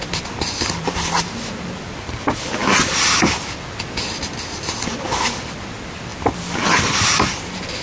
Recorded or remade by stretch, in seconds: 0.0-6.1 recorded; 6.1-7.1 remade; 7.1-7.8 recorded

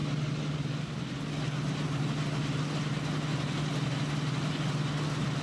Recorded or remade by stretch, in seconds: 0.0-5.4 recorded

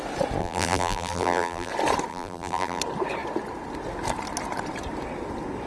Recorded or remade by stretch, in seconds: 0.0-0.4 recorded; 0.4-1.7 remade; 1.7-2.1 recorded; 2.1-2.8 remade; 2.8-5.7 recorded

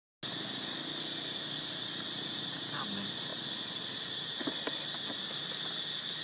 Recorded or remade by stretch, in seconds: 0.0-6.2 recorded